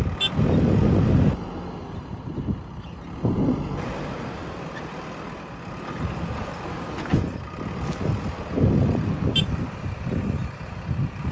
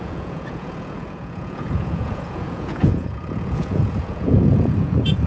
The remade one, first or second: second